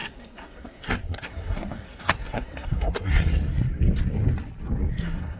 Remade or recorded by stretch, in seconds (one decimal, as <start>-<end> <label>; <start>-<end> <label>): 0.0-3.7 remade; 3.7-4.9 recorded; 4.9-5.4 remade